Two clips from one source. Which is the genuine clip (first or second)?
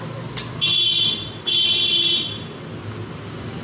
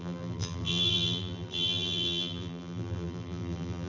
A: first